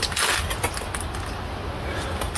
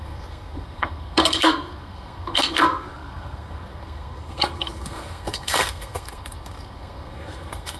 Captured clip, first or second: first